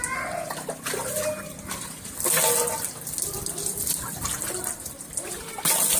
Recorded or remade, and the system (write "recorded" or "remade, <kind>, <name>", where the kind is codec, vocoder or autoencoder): recorded